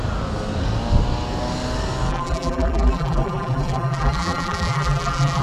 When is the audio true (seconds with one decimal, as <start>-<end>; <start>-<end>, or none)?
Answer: 0.0-2.1